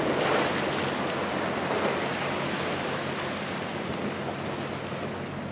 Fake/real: real